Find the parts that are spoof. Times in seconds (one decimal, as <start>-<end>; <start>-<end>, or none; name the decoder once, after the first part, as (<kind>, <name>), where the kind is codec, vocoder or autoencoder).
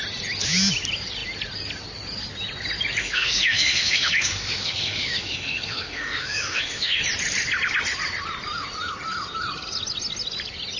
3.0-7.0 (autoencoder, DAC-VAE)